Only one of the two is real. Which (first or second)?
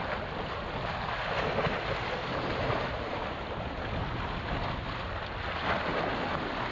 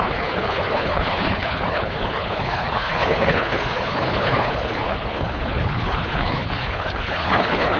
first